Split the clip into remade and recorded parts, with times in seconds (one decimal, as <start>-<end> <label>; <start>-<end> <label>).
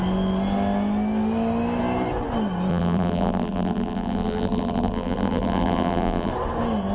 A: 0.0-2.7 recorded; 2.7-6.3 remade; 6.3-6.9 recorded